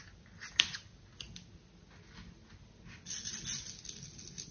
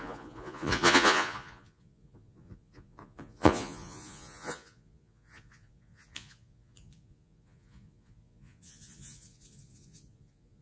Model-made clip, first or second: second